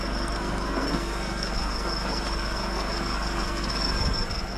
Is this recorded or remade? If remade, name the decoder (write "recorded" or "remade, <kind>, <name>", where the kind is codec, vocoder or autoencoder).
remade, codec, SNAC